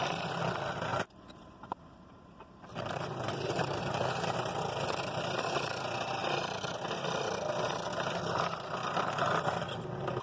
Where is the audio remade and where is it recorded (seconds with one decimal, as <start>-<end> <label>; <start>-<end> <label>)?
0.0-0.9 recorded; 0.9-4.5 remade; 4.5-10.2 recorded